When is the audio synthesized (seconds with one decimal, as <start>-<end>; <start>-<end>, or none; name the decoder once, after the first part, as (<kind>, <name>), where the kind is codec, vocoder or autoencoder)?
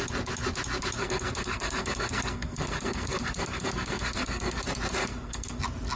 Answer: 1.0-4.6 (codec, SNAC); 5.0-5.6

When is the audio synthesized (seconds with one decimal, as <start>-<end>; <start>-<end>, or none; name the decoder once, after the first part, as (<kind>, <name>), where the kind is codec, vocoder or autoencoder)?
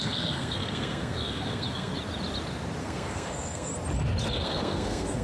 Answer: 0.0-1.9 (codec, SNAC); 2.8-3.7; 4.3-5.2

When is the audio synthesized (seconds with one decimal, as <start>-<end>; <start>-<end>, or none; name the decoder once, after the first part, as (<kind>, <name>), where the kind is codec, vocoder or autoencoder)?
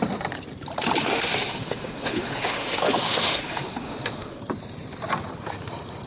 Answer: 1.1-4.4 (autoencoder, DAC-VAE)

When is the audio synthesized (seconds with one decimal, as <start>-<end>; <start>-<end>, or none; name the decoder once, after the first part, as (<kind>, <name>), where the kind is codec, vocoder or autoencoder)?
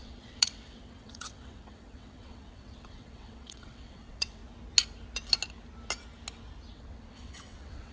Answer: 0.0-4.4 (vocoder, WaveNeXt); 6.7-7.9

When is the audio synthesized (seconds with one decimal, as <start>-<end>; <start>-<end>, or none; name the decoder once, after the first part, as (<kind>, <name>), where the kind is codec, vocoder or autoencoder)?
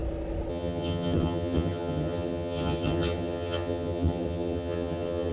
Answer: 0.5-5.3 (vocoder, HiFi-GAN)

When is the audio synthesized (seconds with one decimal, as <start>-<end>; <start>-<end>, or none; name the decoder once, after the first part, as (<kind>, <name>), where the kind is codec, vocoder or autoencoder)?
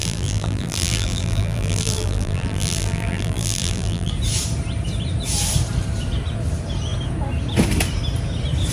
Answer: 0.0-4.1 (vocoder, BigVGAN v2)